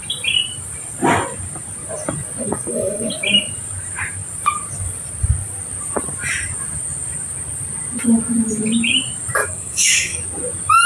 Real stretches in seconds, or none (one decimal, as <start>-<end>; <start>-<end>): 0.0-2.4; 3.1-9.4; 10.2-10.9